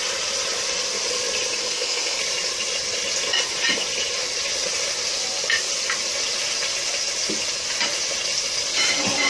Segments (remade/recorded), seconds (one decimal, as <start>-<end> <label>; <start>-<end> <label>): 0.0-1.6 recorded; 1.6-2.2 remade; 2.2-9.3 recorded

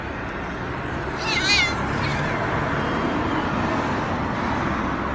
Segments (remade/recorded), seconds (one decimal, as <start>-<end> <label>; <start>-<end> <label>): 0.0-5.1 recorded

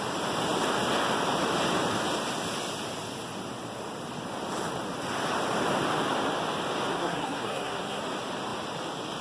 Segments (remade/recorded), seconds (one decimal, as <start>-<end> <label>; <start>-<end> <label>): 0.0-6.9 recorded; 6.9-8.0 remade; 8.0-9.2 recorded